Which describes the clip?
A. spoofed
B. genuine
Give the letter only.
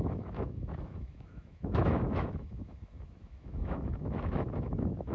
A